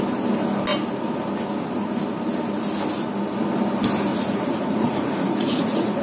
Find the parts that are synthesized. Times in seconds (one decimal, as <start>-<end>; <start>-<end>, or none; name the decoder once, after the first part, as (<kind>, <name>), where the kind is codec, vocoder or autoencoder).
4.1-6.0 (vocoder, Vocos)